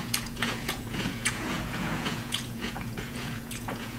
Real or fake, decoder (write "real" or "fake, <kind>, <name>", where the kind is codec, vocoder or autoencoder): fake, vocoder, Vocos